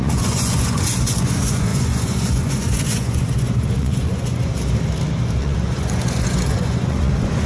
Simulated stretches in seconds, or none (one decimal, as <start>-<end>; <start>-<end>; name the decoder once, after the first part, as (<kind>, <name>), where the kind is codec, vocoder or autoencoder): 0.0-4.5 (vocoder, Vocos); 5.4-7.5